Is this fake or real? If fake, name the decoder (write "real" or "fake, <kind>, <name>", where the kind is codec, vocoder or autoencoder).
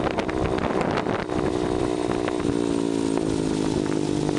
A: real